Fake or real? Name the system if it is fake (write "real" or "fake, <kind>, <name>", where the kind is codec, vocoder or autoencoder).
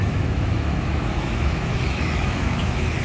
fake, autoencoder, DAC-VAE